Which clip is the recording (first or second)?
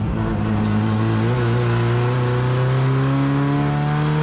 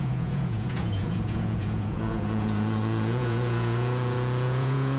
first